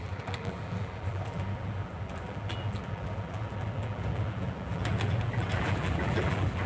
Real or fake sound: fake